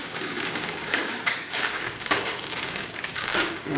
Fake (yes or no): yes